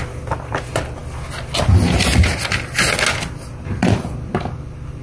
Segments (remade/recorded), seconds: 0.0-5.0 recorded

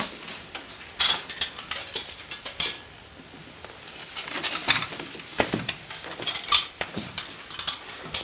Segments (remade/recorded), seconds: 0.0-4.6 recorded; 4.6-7.2 remade; 7.2-8.2 recorded

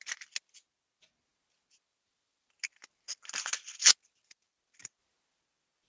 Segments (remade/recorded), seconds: 0.0-5.9 recorded

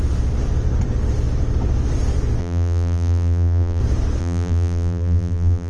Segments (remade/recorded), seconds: 0.0-2.4 recorded; 2.4-3.8 remade; 3.8-4.2 recorded; 4.2-5.7 remade

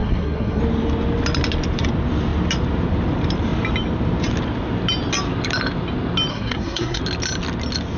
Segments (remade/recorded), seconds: 0.0-0.6 remade; 0.6-6.3 recorded; 6.3-7.0 remade; 7.0-8.0 recorded

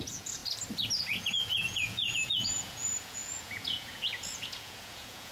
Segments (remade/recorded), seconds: 0.0-0.4 remade; 0.4-1.0 recorded; 1.0-5.3 remade

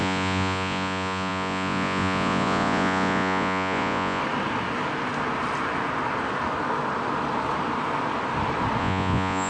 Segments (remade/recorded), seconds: 0.0-4.2 remade; 4.2-8.8 recorded; 8.8-9.5 remade